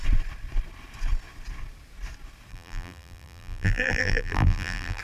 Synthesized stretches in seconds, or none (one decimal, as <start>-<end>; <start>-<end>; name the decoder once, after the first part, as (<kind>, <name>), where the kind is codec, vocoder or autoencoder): 2.5-5.0 (vocoder, BigVGAN v2)

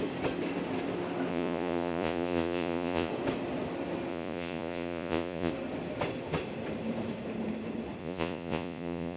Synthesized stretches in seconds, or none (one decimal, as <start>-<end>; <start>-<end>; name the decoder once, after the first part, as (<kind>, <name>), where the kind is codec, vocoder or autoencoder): 1.3-3.1 (vocoder, Vocos); 4.1-5.5; 8.0-9.2

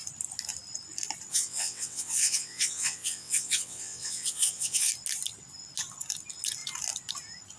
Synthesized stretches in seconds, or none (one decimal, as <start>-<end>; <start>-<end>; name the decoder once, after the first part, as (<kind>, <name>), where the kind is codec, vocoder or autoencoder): 1.3-4.9 (vocoder, WaveNeXt)

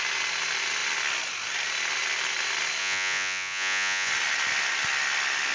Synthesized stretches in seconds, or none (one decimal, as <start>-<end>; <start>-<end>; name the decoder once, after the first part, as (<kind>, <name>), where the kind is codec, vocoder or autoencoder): 2.8-4.1 (vocoder, Vocos)

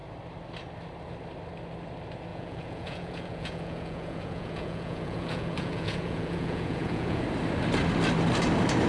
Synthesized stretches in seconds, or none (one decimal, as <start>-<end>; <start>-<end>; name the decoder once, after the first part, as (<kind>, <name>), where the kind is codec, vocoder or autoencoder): 2.3-7.2 (vocoder, Vocos)

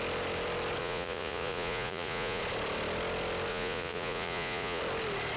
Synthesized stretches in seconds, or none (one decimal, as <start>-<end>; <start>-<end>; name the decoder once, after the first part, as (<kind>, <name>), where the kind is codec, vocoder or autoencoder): 0.8-2.4 (vocoder, Vocos); 3.5-4.8